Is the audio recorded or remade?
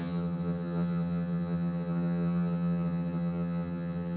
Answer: remade